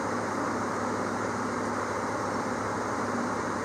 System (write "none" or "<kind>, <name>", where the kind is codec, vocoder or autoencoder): vocoder, BigVGAN v2